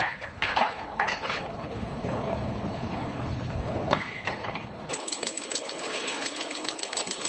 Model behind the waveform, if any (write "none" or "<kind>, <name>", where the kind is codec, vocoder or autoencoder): codec, HILCodec